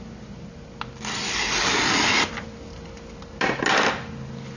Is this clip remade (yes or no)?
no